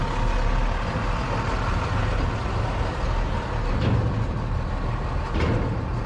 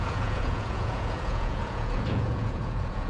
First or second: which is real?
first